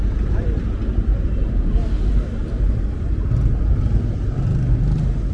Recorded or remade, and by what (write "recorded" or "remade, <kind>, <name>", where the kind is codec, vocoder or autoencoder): recorded